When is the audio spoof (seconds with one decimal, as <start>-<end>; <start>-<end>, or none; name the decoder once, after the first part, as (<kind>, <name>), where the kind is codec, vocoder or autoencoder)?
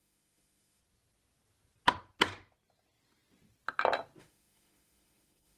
0.0-0.8 (autoencoder, DAC-VAE); 4.2-5.6